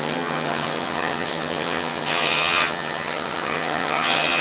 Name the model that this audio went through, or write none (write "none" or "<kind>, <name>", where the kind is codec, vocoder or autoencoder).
vocoder, HiFi-GAN